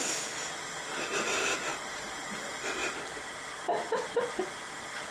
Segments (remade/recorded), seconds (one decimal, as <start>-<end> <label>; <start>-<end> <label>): 0.0-1.7 recorded; 1.7-2.3 remade; 2.3-2.8 recorded; 2.8-5.1 remade